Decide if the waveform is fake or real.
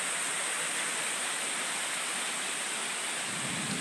real